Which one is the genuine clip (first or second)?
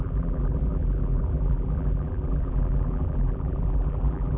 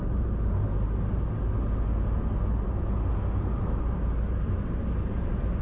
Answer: second